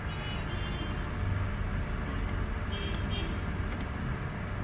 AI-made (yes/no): no